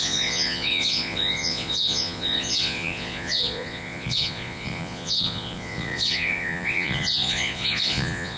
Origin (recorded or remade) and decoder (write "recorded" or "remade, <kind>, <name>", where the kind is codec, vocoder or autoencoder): remade, vocoder, Vocos